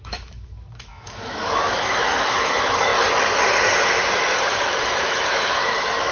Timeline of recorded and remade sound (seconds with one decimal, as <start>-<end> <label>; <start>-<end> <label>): 0.0-2.9 remade; 2.9-4.2 recorded; 4.2-6.1 remade